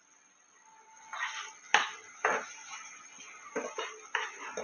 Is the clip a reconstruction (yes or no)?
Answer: no